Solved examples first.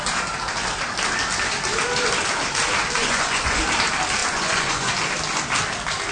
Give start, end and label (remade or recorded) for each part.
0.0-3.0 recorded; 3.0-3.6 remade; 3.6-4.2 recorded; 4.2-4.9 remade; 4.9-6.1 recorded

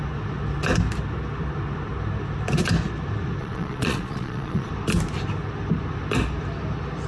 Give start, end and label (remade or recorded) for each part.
0.0-3.4 recorded; 3.4-4.7 remade; 4.7-7.1 recorded

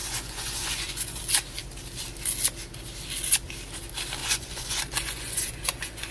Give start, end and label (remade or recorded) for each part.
0.0-1.2 remade; 1.2-4.2 recorded; 4.2-6.1 remade

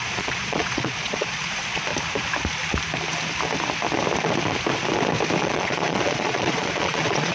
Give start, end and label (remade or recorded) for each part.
0.0-1.9 remade; 1.9-5.4 recorded; 5.4-7.3 remade

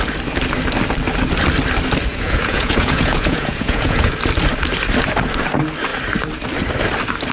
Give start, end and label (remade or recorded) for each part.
0.0-2.1 recorded; 2.1-4.1 remade; 4.1-7.3 recorded

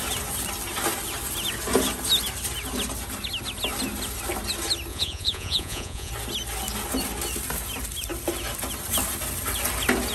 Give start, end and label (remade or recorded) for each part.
0.0-4.9 recorded; 4.9-6.1 remade; 6.1-10.1 recorded